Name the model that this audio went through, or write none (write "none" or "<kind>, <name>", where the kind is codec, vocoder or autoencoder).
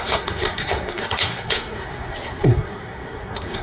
codec, SNAC